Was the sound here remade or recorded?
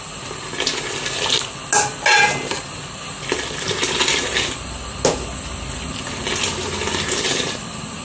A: recorded